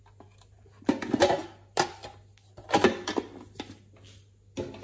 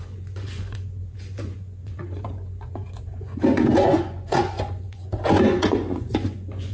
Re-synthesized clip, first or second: second